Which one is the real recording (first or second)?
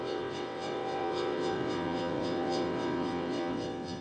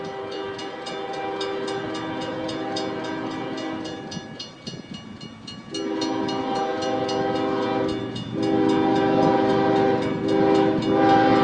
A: second